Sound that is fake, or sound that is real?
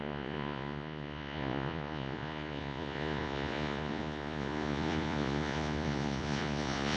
fake